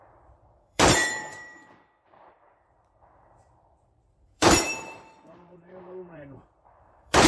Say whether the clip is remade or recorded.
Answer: remade